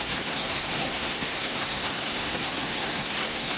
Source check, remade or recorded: remade